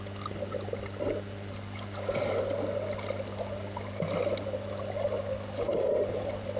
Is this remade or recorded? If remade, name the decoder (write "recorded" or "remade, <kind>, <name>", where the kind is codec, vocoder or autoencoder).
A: recorded